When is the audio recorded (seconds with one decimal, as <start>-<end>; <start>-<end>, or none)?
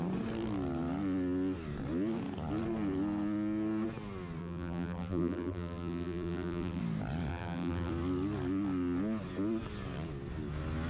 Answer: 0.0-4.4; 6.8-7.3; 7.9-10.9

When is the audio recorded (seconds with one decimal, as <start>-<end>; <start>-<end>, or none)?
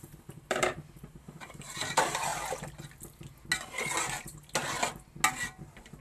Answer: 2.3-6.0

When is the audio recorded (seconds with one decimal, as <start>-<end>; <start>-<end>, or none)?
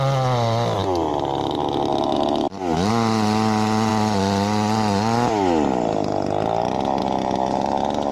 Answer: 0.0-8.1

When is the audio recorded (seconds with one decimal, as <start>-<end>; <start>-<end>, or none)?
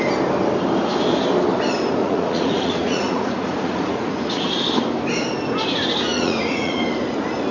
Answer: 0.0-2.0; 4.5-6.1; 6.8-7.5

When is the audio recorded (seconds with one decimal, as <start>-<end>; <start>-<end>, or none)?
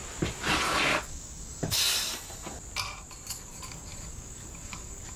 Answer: 0.0-1.0; 1.8-3.3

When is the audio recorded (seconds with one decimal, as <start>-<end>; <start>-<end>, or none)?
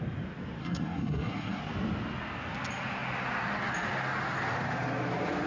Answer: 0.0-0.6; 1.6-5.5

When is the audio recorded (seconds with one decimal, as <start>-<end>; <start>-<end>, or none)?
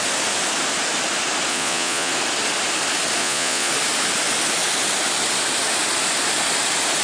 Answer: 0.0-1.5; 2.1-3.2; 3.7-7.0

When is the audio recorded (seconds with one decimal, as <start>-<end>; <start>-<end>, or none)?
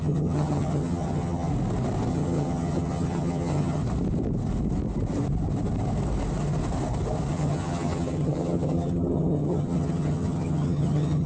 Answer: 1.5-2.1; 3.8-7.3